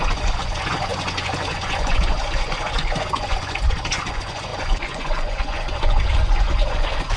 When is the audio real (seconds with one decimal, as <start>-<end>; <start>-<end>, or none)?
none